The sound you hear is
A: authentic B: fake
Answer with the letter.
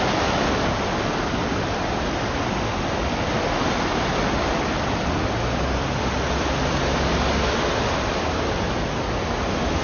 A